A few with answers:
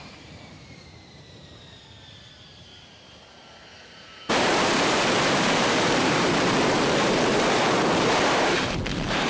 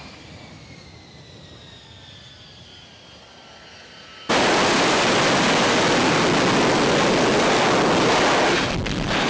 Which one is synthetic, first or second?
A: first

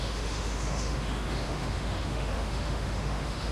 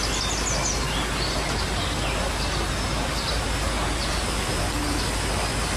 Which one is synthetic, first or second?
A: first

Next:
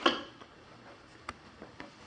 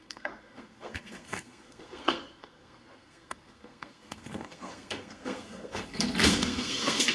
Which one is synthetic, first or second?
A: second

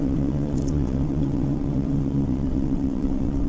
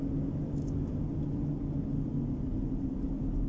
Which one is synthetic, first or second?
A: first